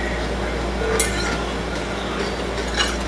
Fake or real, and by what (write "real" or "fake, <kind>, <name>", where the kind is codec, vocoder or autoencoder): real